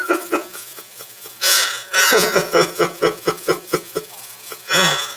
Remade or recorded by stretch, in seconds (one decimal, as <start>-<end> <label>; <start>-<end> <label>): 0.0-5.2 remade